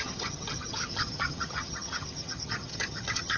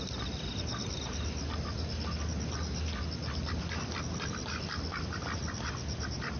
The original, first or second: second